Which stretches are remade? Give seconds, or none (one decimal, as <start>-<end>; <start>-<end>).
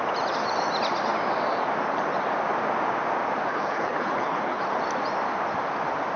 3.5-4.8